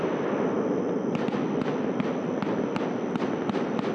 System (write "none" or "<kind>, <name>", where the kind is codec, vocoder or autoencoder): none